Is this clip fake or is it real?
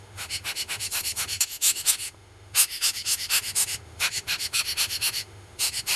fake